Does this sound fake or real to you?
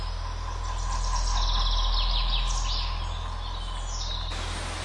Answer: real